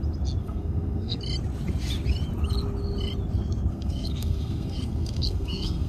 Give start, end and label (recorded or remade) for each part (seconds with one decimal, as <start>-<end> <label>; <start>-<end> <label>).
0.0-0.4 recorded; 0.4-1.2 remade; 1.2-3.7 recorded; 3.7-5.9 remade